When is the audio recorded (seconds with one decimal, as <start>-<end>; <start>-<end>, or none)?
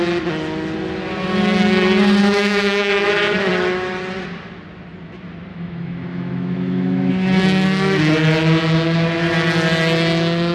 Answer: 0.0-2.2; 3.1-5.5; 7.1-10.5